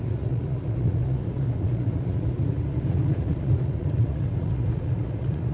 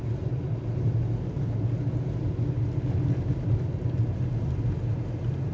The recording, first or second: second